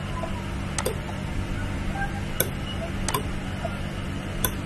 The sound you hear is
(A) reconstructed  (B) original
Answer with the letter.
B